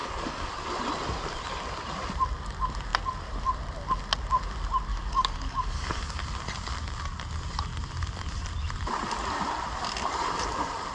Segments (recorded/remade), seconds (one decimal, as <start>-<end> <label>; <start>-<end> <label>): 0.0-0.5 remade; 0.5-4.9 recorded; 4.9-6.2 remade; 6.2-10.9 recorded